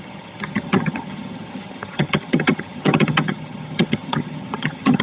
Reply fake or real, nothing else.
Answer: fake